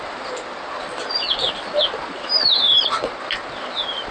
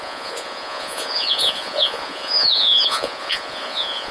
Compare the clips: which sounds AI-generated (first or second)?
second